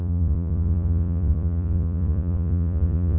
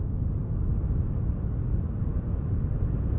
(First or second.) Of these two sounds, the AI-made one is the first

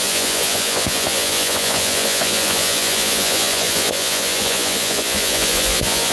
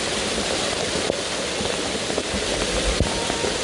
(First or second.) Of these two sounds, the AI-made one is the first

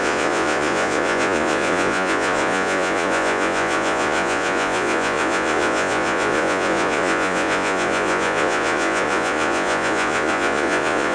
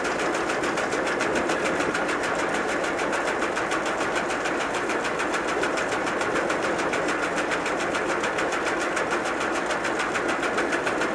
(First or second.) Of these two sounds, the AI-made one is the first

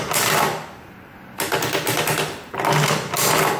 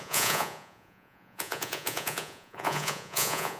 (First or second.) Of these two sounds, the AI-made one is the second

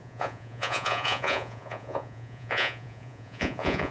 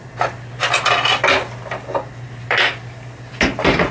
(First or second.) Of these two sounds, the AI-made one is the first